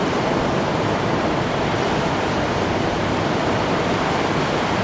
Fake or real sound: fake